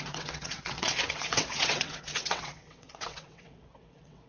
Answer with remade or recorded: remade